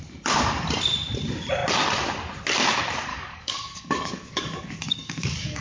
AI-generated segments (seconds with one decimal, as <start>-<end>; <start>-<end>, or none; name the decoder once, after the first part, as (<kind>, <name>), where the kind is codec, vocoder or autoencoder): 3.1-5.6 (codec, DAC)

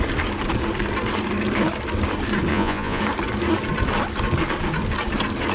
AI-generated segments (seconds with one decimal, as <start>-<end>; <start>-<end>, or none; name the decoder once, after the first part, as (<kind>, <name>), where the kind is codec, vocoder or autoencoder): 2.5-3.0 (vocoder, Vocos)